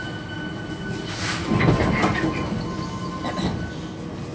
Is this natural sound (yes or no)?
yes